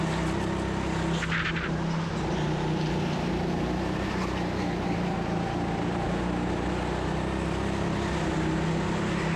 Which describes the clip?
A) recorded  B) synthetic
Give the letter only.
A